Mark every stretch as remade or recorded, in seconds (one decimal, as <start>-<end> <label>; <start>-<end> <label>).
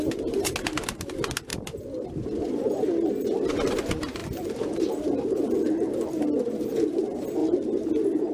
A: 0.0-1.5 recorded; 1.5-2.6 remade; 2.6-4.2 recorded; 4.2-5.7 remade; 5.7-7.4 recorded; 7.4-7.9 remade; 7.9-8.3 recorded